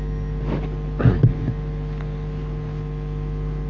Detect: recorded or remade recorded